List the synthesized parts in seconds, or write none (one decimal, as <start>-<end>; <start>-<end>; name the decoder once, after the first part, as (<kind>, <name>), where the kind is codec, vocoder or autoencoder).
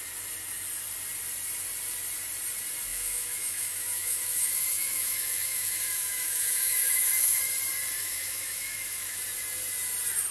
2.9-7.4 (autoencoder, DAC-VAE); 8.0-9.2